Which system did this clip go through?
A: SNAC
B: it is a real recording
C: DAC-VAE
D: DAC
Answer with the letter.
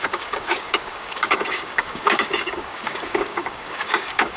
D